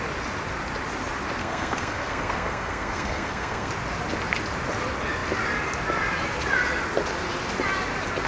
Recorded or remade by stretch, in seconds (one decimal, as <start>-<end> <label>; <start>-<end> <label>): 0.0-1.4 recorded; 1.4-3.7 remade; 3.7-8.3 recorded